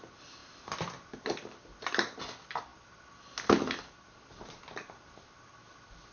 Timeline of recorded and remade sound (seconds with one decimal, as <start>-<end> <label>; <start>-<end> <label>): 0.0-6.1 recorded